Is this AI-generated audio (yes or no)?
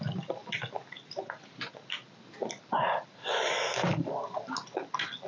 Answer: no